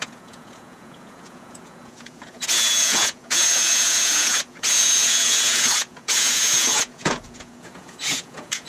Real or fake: fake